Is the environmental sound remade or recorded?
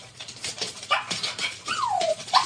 remade